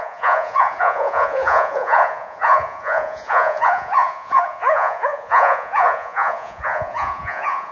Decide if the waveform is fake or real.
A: fake